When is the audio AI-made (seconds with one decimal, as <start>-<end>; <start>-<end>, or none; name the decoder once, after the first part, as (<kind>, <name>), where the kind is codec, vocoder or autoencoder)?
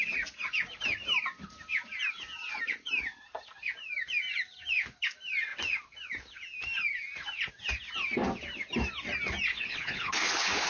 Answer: 9.5-10.7 (codec, HILCodec)